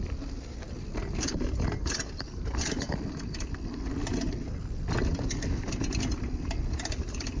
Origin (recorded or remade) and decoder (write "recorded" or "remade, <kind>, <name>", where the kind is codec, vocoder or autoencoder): recorded